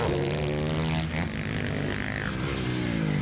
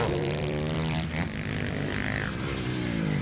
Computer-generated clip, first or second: second